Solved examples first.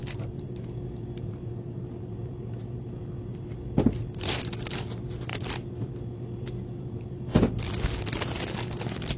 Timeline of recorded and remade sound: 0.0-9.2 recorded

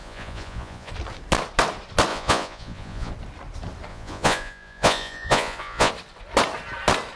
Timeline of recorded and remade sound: 0.0-0.9 remade; 0.9-2.1 recorded; 2.1-3.1 remade; 3.1-3.9 recorded; 3.9-5.9 remade; 5.9-7.2 recorded

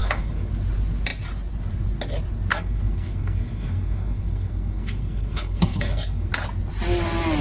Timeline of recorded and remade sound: 0.0-0.5 remade; 0.5-2.5 recorded; 2.5-6.3 remade; 6.3-7.4 recorded

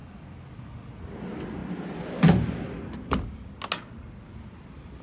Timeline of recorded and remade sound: 0.0-5.0 recorded

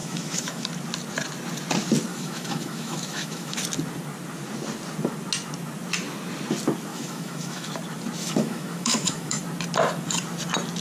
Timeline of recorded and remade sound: 0.0-0.7 remade; 0.7-2.1 recorded; 2.1-3.6 remade; 3.6-6.9 recorded; 6.9-7.7 remade; 7.7-8.2 recorded; 8.2-9.4 remade; 9.4-10.8 recorded

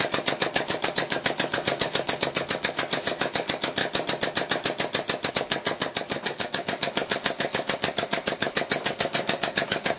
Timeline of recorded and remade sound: 0.0-3.8 remade; 3.8-5.3 recorded; 5.3-10.0 remade

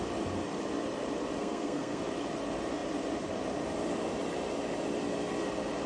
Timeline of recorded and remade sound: 0.0-1.4 recorded; 1.4-2.0 remade; 2.0-5.9 recorded

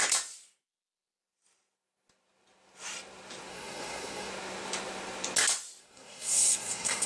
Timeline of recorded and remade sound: 0.0-3.5 recorded; 3.5-4.3 remade; 4.3-5.8 recorded; 5.8-7.1 remade